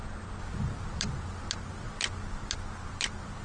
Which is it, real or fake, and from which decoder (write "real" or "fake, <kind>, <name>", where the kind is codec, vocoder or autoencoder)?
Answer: real